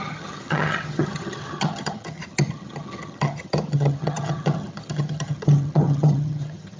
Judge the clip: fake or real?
fake